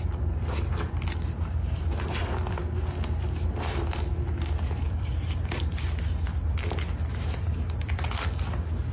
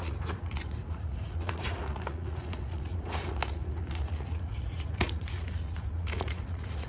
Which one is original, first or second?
first